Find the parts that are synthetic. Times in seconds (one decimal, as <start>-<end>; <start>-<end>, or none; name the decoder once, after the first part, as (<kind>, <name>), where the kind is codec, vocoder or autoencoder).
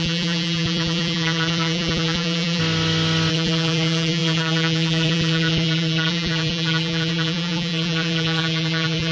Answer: 0.0-2.6 (vocoder, BigVGAN v2); 3.3-9.1